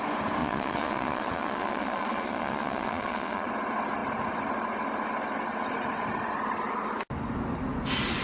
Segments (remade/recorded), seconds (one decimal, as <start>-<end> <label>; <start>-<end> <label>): 0.0-0.4 recorded; 0.4-3.5 remade; 3.5-8.2 recorded